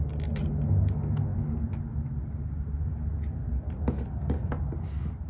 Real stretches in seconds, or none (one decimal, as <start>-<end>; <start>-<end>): 0.0-5.3